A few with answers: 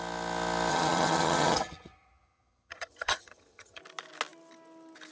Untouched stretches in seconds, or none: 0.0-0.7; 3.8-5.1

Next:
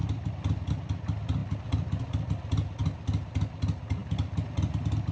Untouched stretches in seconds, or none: 0.0-1.4; 2.3-5.1